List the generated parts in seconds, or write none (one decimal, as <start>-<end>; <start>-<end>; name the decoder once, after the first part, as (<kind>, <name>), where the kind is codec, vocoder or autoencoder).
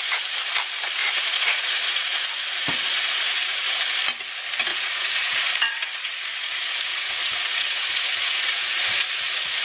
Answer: 1.0-3.8 (vocoder, Vocos); 4.7-9.6